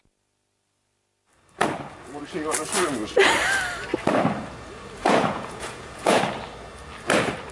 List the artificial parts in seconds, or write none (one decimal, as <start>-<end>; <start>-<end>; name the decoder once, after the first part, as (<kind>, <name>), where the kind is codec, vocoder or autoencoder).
5.0-6.2 (vocoder, Vocos)